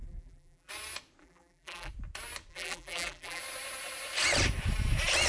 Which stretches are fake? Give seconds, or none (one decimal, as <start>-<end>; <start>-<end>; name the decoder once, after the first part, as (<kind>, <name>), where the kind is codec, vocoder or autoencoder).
0.0-0.7 (vocoder, BigVGAN v2); 1.2-1.9; 2.5-3.4

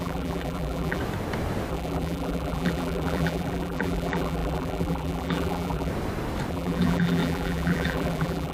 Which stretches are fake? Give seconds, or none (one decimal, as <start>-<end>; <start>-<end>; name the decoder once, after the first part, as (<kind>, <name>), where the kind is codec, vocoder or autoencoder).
0.0-1.0 (vocoder, BigVGAN v2); 1.7-5.9; 6.5-8.5

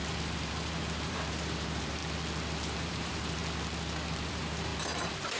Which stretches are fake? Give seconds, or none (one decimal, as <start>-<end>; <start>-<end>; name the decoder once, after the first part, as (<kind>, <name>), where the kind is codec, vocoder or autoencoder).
0.0-2.0 (vocoder, BigVGAN v2); 2.7-3.4; 4.3-5.4

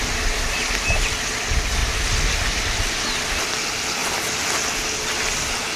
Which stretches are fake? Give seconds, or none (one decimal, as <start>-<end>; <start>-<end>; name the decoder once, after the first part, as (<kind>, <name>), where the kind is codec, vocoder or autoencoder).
none

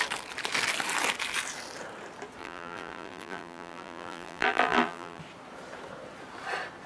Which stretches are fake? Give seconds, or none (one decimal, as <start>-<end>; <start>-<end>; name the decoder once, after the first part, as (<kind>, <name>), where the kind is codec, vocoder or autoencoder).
2.4-5.2 (vocoder, BigVGAN v2)

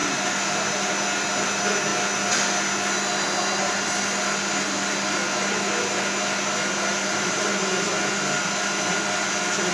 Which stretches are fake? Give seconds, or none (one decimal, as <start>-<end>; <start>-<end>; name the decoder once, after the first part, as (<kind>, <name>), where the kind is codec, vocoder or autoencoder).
0.0-0.9 (vocoder, BigVGAN v2); 6.9-7.5

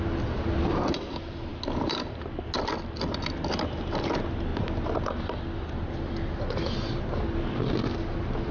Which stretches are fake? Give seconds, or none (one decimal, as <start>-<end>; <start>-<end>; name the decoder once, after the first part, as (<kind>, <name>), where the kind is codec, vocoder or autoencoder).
none